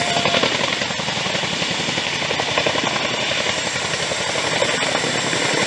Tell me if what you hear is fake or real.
real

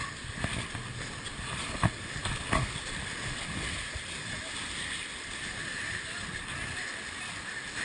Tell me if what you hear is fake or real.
real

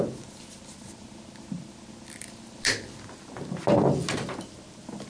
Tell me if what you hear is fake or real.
real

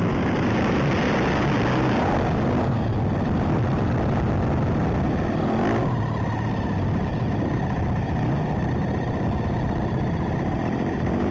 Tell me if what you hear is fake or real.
real